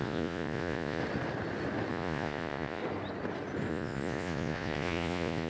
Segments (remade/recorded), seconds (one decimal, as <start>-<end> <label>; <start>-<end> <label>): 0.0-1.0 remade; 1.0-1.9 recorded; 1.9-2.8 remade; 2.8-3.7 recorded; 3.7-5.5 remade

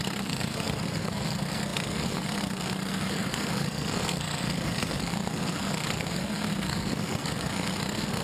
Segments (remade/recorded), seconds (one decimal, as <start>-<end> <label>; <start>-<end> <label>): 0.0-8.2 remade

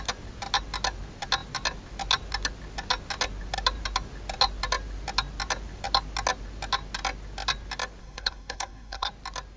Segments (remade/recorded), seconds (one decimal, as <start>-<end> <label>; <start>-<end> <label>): 0.0-8.0 recorded; 8.0-9.1 remade; 9.1-9.6 recorded